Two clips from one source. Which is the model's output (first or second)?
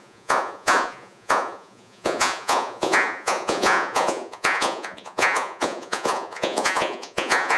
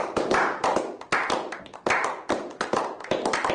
first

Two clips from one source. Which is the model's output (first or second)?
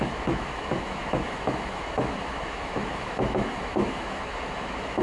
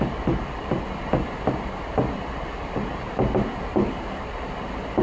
first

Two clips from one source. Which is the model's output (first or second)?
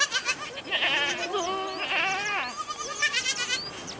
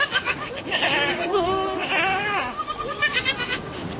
second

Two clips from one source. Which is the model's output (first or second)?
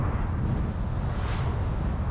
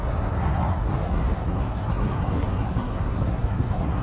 second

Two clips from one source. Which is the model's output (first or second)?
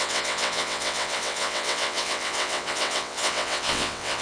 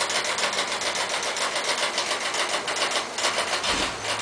first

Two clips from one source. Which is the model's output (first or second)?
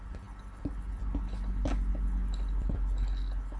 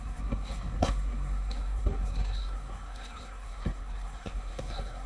second